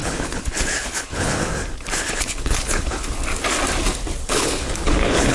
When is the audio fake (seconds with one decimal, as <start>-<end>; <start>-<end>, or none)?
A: 0.0-1.5; 2.0-3.2; 4.2-5.3